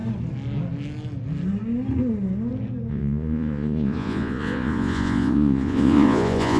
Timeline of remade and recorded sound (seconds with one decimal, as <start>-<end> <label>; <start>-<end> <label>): 0.0-2.9 recorded; 2.9-6.6 remade